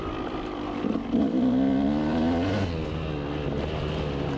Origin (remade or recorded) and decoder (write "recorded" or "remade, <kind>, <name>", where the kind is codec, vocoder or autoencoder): recorded